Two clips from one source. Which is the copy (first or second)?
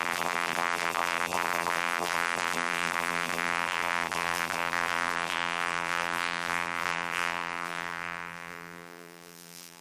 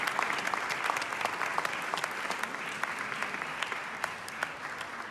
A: first